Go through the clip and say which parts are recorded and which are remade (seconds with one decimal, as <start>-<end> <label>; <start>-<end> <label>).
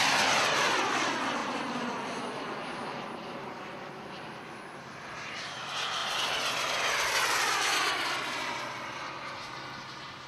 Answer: 0.0-6.0 remade; 6.0-6.9 recorded; 6.9-10.3 remade